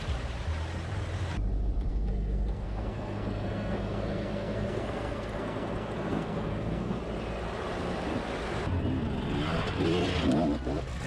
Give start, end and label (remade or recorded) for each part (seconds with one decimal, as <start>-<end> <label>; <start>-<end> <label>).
0.0-1.9 recorded; 1.9-7.0 remade; 7.0-11.1 recorded